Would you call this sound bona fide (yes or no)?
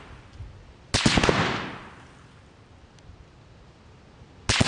yes